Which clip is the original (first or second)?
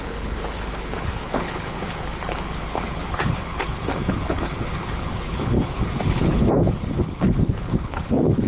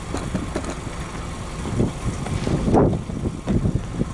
second